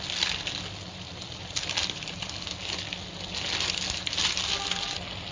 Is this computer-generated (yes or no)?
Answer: no